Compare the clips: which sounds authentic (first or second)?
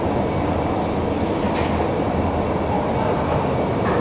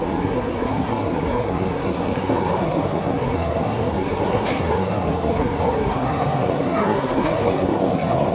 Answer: first